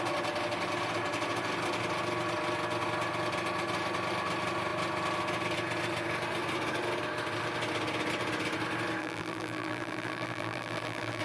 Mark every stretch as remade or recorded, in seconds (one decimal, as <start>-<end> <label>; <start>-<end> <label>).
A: 0.0-9.0 recorded; 9.0-11.2 remade